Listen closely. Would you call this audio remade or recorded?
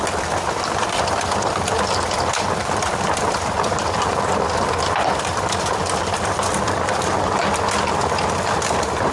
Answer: remade